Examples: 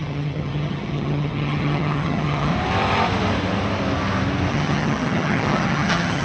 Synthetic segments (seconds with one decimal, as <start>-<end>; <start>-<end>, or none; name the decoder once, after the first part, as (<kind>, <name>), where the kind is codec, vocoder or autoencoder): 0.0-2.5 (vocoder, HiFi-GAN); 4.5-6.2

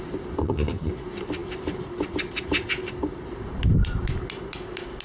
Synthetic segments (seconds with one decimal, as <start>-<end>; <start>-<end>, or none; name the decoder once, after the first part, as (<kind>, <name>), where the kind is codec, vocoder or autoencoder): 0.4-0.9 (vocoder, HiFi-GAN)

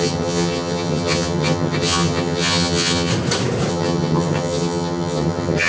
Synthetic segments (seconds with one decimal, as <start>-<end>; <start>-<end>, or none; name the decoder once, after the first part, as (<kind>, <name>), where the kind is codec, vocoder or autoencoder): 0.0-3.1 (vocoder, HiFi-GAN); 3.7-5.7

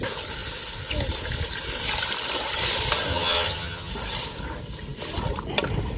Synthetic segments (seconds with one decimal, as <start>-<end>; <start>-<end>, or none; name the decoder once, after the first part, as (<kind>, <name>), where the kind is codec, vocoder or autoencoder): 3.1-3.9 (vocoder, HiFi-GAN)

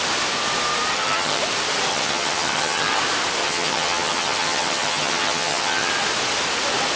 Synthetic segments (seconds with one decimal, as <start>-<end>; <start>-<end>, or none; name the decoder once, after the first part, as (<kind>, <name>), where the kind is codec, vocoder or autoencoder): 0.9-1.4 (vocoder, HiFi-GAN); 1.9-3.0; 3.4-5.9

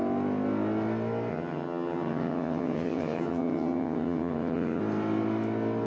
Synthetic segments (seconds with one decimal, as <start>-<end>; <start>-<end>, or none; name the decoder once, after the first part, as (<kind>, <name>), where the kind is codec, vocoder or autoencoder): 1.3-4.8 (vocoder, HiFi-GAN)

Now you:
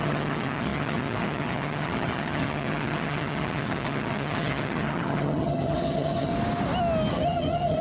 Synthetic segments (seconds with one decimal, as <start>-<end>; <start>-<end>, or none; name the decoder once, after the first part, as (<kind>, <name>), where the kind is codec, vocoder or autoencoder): 0.0-6.3 (vocoder, HiFi-GAN); 7.1-7.8